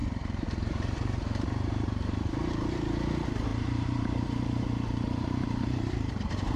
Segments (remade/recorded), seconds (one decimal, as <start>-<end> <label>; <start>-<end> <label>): 0.0-3.1 remade; 3.1-3.5 recorded; 3.5-6.6 remade